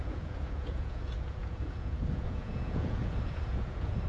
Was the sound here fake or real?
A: fake